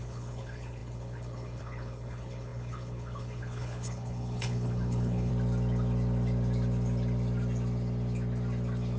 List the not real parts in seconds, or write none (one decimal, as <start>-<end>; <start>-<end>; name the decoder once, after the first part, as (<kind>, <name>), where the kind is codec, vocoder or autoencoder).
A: 0.0-5.3 (codec, HILCodec)